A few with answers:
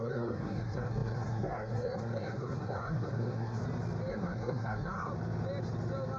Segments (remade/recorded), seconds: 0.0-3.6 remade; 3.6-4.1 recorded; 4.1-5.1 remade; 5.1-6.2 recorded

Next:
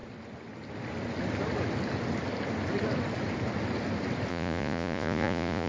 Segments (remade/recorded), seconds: 0.0-4.3 recorded; 4.3-5.7 remade

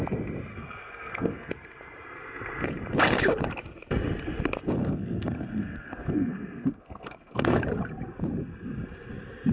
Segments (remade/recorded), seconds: 0.0-0.5 recorded; 0.5-1.5 remade; 1.5-4.8 recorded; 4.8-7.6 remade; 7.6-9.5 recorded

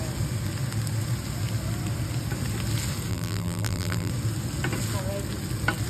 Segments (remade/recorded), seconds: 0.0-3.1 recorded; 3.1-4.1 remade; 4.1-5.9 recorded

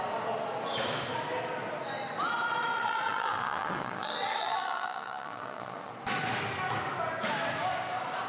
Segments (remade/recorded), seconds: 0.0-2.7 recorded; 2.7-5.9 remade; 5.9-8.3 recorded

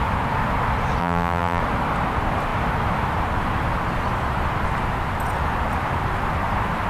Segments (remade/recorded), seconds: 0.0-1.0 recorded; 1.0-1.6 remade; 1.6-6.9 recorded

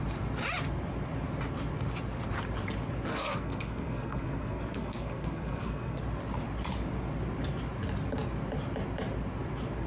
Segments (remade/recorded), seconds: 0.0-3.1 recorded; 3.1-6.0 remade; 6.0-9.9 recorded

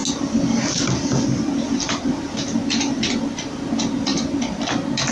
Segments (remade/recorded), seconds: 0.0-5.1 recorded